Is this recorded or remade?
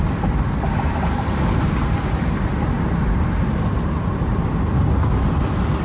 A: recorded